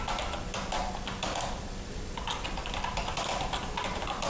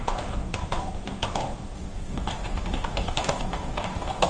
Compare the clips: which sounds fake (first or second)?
second